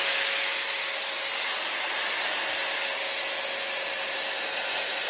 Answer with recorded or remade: recorded